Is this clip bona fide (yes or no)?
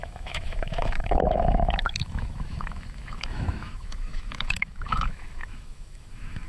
no